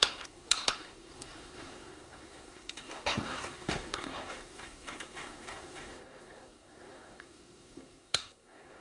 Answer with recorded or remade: remade